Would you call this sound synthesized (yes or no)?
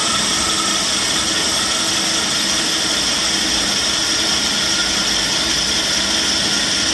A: no